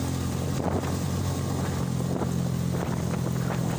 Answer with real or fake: real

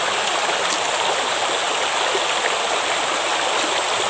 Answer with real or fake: real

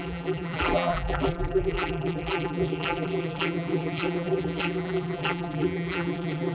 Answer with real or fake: fake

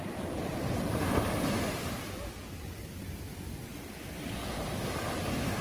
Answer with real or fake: real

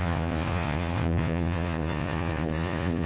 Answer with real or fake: fake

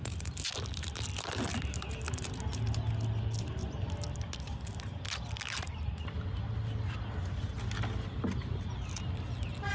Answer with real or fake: real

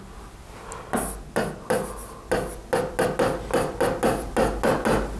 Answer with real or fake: real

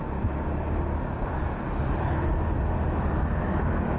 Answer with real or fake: real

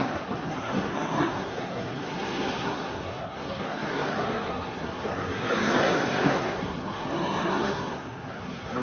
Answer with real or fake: fake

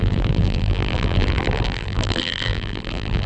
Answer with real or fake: fake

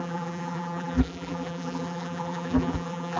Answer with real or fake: fake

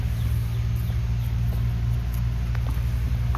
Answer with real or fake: real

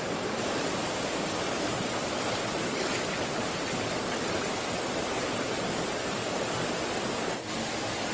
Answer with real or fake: real